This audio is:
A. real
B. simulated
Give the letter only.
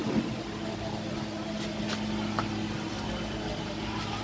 A